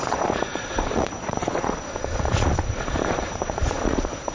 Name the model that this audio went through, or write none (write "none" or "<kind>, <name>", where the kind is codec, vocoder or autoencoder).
vocoder, Vocos